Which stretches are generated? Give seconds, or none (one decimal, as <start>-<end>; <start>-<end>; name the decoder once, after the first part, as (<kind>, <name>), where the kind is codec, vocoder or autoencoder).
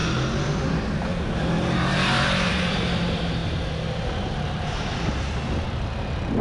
0.7-1.1 (vocoder, BigVGAN v2); 1.9-3.4; 4.2-6.4